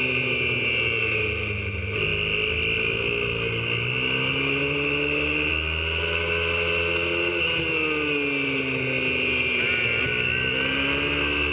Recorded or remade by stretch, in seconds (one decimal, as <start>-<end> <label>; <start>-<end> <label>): 0.0-11.5 recorded